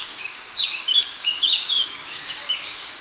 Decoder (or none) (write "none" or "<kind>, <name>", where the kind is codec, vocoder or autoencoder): codec, DAC